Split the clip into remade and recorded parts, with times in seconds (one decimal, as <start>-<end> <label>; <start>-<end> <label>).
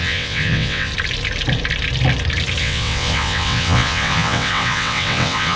0.0-0.9 remade; 0.9-2.6 recorded; 2.6-5.6 remade